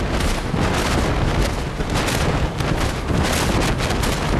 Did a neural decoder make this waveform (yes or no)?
no